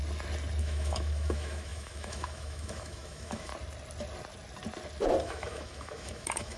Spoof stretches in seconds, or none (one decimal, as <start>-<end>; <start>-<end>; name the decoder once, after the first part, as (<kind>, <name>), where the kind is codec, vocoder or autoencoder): 0.6-3.5 (autoencoder, DAC-VAE); 5.2-6.6